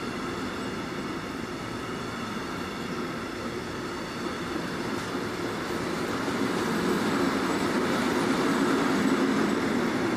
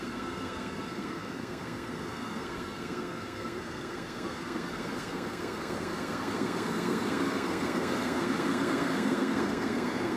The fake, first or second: second